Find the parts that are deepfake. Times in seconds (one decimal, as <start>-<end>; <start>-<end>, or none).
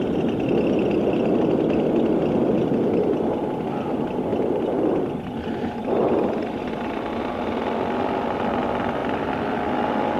4.3-7.2; 9.0-9.7